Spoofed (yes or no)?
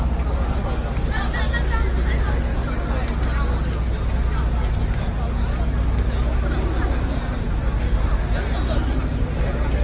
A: no